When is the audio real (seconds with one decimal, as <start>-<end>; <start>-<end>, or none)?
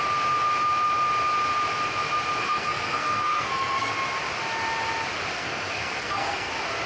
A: 0.0-2.4; 3.9-5.3; 6.5-6.9